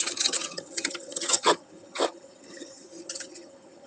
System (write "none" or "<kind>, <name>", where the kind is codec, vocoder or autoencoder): vocoder, HiFi-GAN